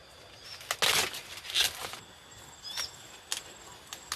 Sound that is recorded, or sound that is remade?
recorded